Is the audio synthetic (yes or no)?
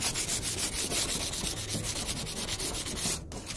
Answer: no